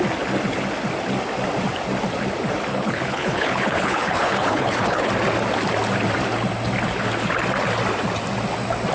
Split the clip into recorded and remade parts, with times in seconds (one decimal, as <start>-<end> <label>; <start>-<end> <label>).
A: 0.0-2.7 recorded; 2.7-5.1 remade; 5.1-8.9 recorded